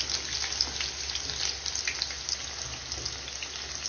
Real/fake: real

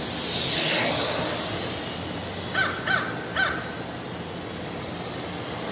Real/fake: real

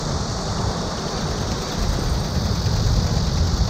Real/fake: real